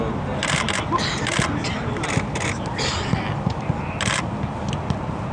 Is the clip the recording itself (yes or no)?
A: yes